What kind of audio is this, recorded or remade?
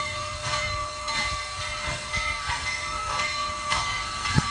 remade